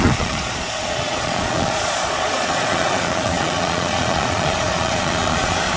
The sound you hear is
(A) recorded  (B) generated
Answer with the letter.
B